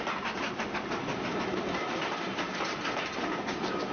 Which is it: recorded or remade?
recorded